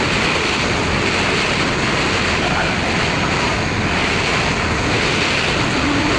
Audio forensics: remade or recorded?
recorded